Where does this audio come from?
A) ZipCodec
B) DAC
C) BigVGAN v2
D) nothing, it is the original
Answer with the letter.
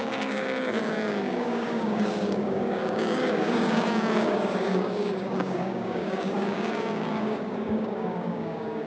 B